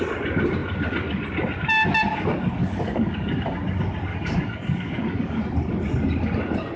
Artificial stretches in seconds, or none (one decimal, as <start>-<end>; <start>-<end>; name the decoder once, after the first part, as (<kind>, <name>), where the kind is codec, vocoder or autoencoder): 2.6-3.6 (codec, DAC); 4.1-5.4